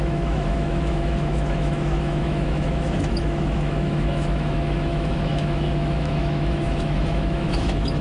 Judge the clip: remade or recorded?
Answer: remade